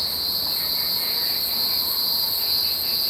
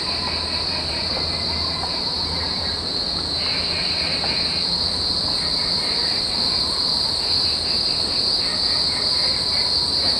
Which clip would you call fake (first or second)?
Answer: second